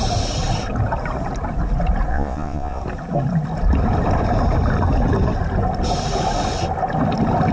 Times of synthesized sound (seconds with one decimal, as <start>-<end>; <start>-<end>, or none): 2.1-2.8